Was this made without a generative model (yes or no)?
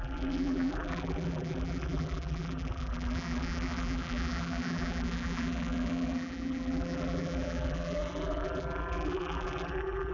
no